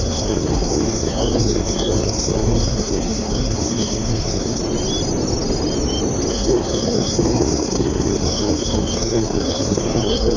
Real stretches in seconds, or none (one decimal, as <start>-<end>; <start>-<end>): 4.6-6.3